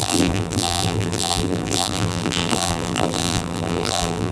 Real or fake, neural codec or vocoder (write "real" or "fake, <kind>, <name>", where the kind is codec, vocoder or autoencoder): fake, vocoder, BigVGAN v2